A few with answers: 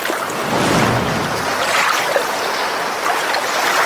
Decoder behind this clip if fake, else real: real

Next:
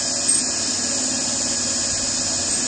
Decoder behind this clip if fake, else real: real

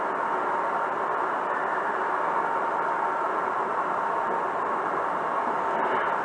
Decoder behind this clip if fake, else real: real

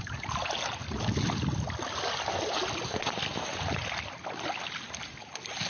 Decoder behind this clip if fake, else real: real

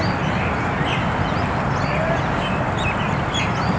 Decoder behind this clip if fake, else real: real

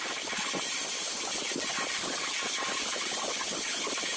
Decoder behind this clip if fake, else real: real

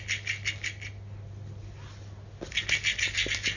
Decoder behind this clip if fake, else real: real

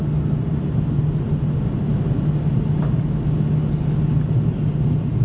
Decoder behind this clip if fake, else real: real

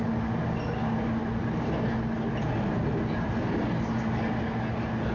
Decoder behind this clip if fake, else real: real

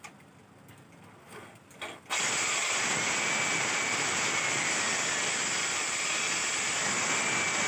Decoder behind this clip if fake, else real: real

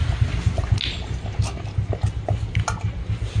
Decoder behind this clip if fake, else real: real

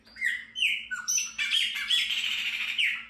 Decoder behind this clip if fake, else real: fake, vocoder, BigVGAN v2